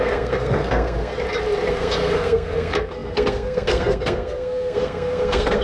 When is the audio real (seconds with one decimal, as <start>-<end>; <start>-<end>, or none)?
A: 1.1-1.7